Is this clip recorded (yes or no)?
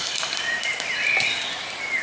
yes